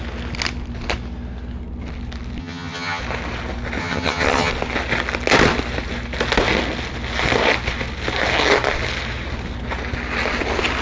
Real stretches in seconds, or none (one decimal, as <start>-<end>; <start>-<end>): 0.0-2.4; 3.0-3.8; 4.5-10.8